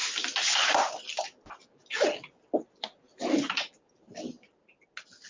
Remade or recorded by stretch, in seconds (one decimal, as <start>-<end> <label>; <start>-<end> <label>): 0.0-5.3 recorded